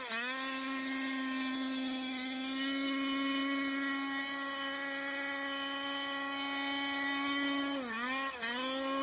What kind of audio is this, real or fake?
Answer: real